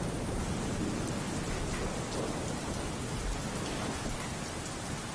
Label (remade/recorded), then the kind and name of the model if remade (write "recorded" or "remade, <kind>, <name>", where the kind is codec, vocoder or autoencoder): recorded